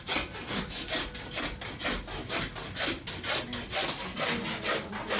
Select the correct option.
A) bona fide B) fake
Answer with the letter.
A